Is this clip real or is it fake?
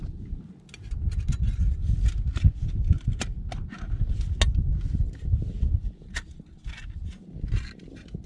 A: real